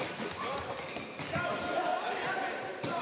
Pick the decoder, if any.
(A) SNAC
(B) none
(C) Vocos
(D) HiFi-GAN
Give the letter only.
B